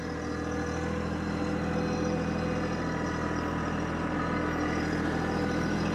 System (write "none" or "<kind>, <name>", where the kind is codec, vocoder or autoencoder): none